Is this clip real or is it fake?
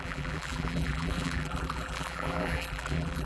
fake